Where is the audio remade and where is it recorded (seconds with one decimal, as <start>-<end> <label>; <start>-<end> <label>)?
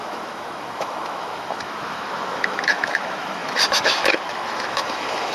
0.0-5.3 remade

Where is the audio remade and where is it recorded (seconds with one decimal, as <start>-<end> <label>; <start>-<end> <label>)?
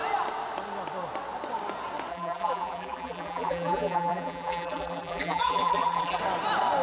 0.0-2.1 recorded; 2.1-6.2 remade; 6.2-6.8 recorded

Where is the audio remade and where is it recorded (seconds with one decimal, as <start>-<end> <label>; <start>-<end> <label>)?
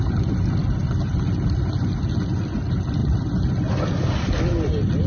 0.0-5.1 recorded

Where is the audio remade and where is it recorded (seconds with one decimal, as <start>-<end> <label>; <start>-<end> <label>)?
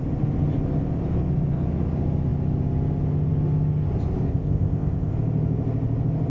0.0-4.3 recorded; 4.3-5.1 remade; 5.1-6.3 recorded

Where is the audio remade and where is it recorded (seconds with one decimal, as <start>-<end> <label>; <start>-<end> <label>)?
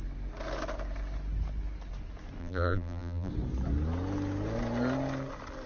0.0-2.4 recorded; 2.4-3.3 remade; 3.3-5.7 recorded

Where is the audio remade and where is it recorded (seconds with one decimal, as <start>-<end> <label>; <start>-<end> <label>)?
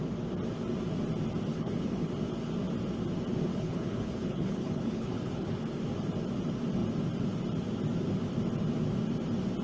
0.0-1.5 recorded; 1.5-2.1 remade; 2.1-3.5 recorded; 3.5-5.6 remade; 5.6-9.6 recorded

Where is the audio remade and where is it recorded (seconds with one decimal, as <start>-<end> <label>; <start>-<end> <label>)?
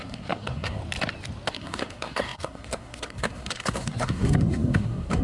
0.0-0.8 remade; 0.8-1.5 recorded; 1.5-5.2 remade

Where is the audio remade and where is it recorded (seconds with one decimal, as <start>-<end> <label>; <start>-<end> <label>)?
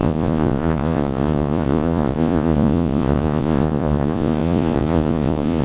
0.0-5.6 remade